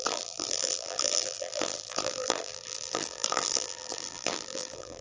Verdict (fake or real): fake